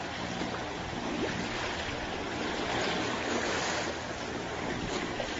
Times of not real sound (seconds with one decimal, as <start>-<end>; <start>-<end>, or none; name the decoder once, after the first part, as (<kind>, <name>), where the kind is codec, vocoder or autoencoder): 1.0-4.2 (vocoder, BigVGAN v2)